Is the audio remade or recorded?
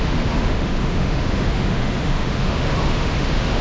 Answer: remade